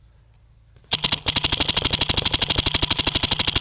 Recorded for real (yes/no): yes